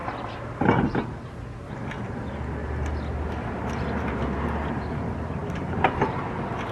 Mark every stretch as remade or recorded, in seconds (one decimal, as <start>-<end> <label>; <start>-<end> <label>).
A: 0.0-5.4 recorded; 5.4-6.0 remade; 6.0-6.7 recorded